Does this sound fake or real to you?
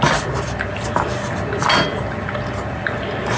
real